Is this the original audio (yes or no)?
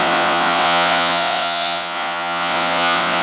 no